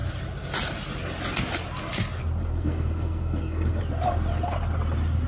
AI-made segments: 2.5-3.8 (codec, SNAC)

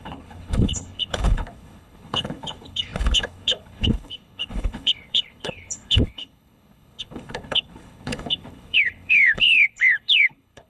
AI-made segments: 0.0-10.7 (codec, HILCodec)

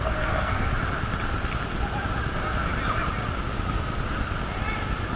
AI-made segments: 0.0-0.7 (codec, SNAC)